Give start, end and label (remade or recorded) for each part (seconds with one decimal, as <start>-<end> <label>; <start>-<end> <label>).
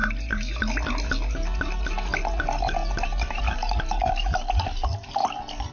0.0-5.7 recorded